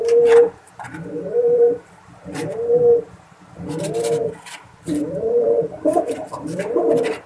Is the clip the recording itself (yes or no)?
no